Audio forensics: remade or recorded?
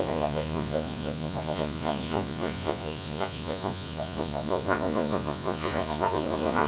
remade